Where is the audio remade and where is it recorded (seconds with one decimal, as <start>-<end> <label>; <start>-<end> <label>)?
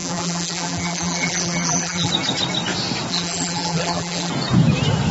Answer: 0.0-2.1 remade; 2.1-3.1 recorded; 3.1-4.3 remade; 4.3-5.1 recorded